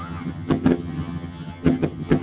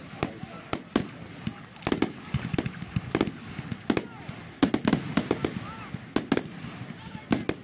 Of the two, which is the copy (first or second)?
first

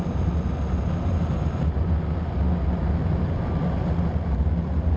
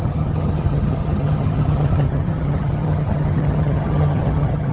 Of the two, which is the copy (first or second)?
second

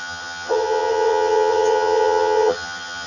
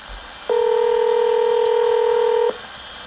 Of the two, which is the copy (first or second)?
first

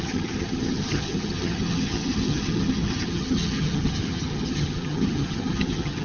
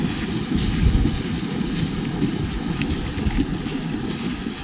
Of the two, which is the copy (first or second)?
first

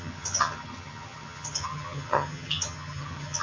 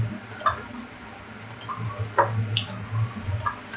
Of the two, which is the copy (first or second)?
first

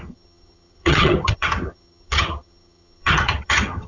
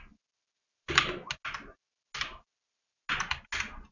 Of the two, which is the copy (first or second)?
first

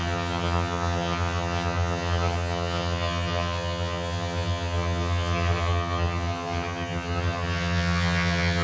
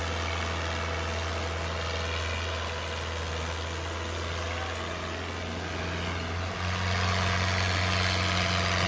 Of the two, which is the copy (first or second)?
first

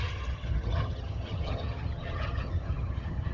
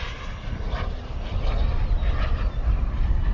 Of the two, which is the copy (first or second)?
first